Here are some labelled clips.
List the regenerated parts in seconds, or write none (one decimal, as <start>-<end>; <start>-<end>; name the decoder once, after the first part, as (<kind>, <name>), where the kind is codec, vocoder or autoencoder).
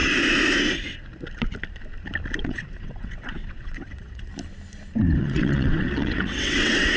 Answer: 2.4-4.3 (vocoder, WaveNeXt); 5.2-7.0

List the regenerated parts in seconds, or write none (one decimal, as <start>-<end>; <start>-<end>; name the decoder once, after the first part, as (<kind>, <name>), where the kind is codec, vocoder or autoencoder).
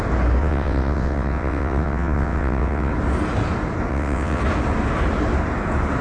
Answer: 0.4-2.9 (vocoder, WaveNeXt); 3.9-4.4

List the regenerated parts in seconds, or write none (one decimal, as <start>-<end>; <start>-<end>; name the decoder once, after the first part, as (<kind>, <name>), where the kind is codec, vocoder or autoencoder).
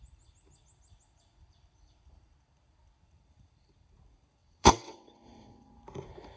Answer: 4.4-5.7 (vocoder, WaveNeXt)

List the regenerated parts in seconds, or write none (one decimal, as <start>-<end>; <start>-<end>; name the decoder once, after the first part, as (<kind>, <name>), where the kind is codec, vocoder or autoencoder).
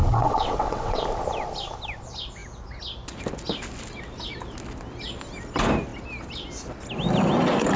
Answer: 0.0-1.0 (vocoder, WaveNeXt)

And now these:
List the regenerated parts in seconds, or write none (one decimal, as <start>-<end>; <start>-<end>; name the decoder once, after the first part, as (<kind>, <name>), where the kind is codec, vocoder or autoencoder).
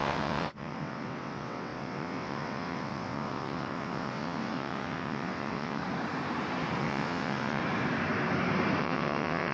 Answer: 0.0-5.8 (vocoder, WaveNeXt); 6.8-7.6; 8.8-9.5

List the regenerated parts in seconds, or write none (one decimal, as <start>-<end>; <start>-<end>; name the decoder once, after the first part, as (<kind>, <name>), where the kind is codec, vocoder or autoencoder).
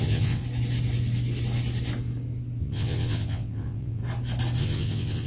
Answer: 0.0-0.4 (vocoder, WaveNeXt); 2.6-4.0; 4.6-5.3